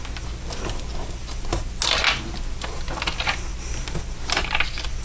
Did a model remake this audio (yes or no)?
no